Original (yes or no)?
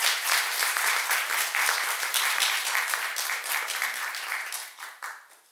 no